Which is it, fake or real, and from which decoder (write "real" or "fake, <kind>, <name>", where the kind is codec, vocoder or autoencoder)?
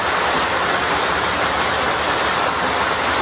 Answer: real